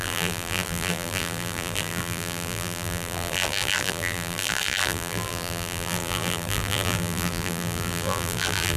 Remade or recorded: remade